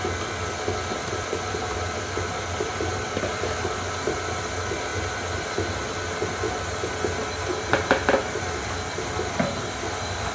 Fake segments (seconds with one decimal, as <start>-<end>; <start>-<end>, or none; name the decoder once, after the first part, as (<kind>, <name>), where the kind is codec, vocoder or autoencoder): 0.9-3.2 (vocoder, BigVGAN v2); 7.2-8.7